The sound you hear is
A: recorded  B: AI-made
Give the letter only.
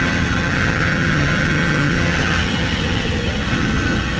B